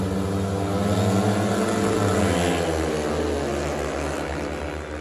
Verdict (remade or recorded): recorded